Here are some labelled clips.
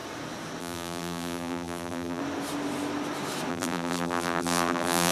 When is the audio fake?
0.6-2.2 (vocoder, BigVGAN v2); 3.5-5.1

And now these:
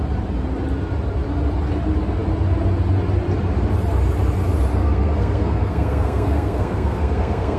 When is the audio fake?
4.8-7.6 (codec, SNAC)

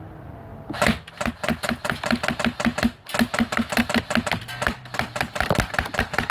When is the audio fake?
none

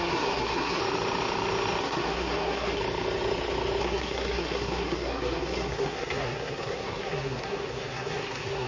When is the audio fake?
0.0-0.8 (codec, SNAC); 1.8-2.8; 3.8-8.7

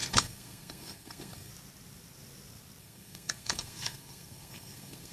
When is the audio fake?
0.0-1.5 (codec, SNAC); 2.8-5.1

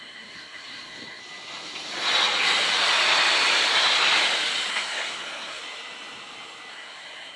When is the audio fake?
0.0-1.2 (codec, SNAC); 4.7-5.6; 6.7-7.4